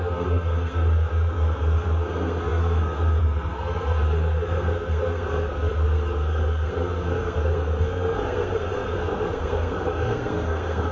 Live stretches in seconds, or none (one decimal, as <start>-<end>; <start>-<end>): none